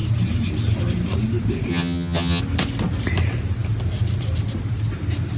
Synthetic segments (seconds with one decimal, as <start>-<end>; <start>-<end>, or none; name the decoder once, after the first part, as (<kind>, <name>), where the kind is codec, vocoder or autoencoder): 1.7-2.4 (vocoder, HiFi-GAN)